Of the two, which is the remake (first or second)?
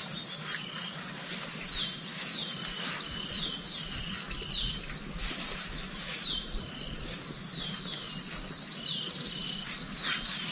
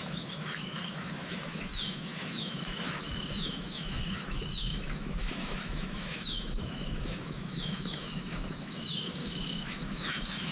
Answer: second